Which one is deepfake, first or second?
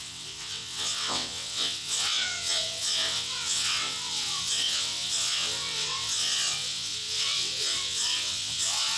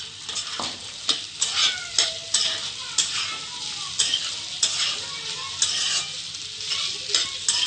first